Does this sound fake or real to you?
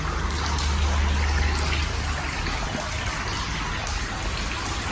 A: real